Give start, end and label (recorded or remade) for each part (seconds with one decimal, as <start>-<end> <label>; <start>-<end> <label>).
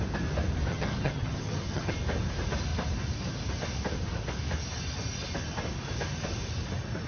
0.0-0.7 recorded; 0.7-1.9 remade; 1.9-7.1 recorded